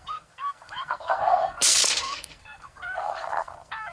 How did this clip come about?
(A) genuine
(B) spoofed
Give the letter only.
B